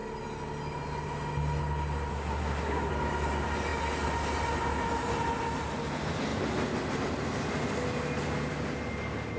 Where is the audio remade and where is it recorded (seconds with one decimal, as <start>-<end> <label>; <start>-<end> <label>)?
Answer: 0.0-2.1 recorded; 2.1-2.9 remade; 2.9-9.4 recorded